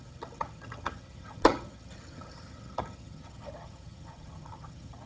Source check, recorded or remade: remade